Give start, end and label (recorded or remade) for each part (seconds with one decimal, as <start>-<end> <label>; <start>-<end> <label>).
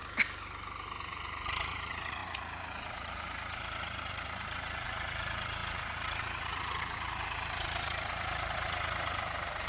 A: 0.0-1.0 recorded; 1.0-9.7 remade